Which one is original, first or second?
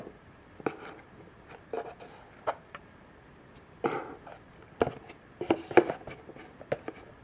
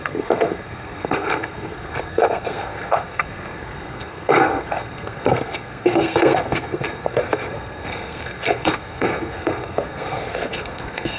first